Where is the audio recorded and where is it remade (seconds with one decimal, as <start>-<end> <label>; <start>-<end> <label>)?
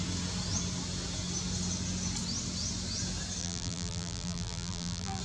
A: 0.0-3.4 recorded; 3.4-5.2 remade